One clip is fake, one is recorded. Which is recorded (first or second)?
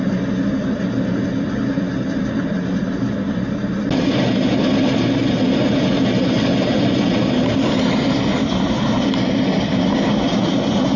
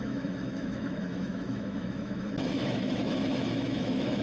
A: first